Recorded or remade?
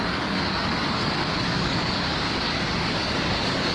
remade